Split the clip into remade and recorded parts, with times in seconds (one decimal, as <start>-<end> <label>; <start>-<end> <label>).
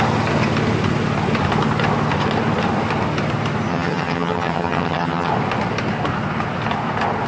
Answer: 0.0-3.7 recorded; 3.7-5.3 remade; 5.3-7.3 recorded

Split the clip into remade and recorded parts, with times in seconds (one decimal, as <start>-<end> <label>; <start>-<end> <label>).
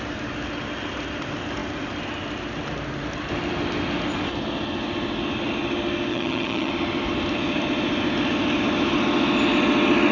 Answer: 0.0-6.1 recorded; 6.1-6.7 remade; 6.7-10.1 recorded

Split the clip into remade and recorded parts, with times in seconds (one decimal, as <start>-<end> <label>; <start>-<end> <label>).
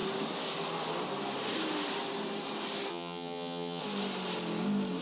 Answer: 0.0-2.9 recorded; 2.9-3.8 remade; 3.8-5.0 recorded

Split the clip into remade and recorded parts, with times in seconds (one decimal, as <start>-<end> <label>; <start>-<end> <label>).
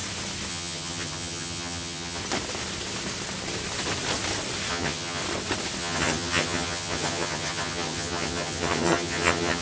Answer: 0.0-0.5 recorded; 0.5-2.2 remade; 2.2-4.7 recorded; 4.7-5.2 remade; 5.2-5.8 recorded; 5.8-9.6 remade